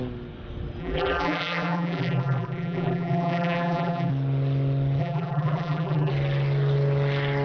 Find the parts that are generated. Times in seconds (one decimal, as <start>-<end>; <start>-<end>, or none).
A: 0.8-4.1; 5.0-6.1